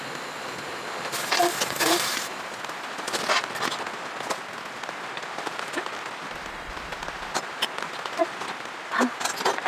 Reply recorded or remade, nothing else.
recorded